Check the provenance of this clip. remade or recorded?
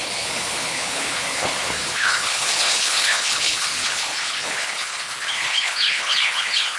remade